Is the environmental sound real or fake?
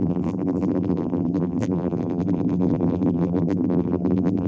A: fake